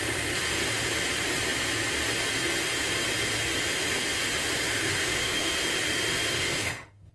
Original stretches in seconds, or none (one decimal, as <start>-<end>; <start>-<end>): 0.0-4.8; 5.5-6.3